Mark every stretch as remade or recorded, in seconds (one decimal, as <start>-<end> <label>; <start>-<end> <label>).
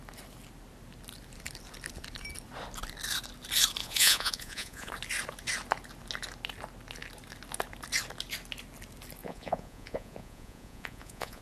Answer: 0.0-3.8 recorded; 3.8-4.9 remade; 4.9-9.2 recorded; 9.2-11.4 remade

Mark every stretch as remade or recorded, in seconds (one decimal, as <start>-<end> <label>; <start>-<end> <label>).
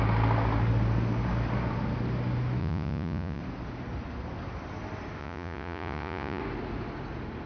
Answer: 0.0-2.6 recorded; 2.6-3.4 remade; 3.4-5.2 recorded; 5.2-6.4 remade; 6.4-7.5 recorded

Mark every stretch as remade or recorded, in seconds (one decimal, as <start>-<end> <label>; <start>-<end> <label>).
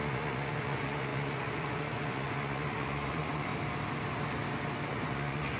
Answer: 0.0-3.5 remade; 3.5-4.9 recorded; 4.9-5.6 remade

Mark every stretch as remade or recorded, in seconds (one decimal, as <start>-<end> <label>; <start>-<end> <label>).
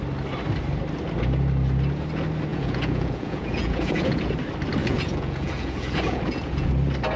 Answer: 0.0-2.5 recorded; 2.5-4.3 remade; 4.3-4.8 recorded; 4.8-6.7 remade; 6.7-7.2 recorded